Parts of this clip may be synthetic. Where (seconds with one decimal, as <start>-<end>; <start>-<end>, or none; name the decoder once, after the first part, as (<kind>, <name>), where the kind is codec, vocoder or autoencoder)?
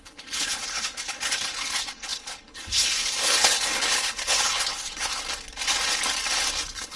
0.0-5.1 (codec, HILCodec); 6.6-7.0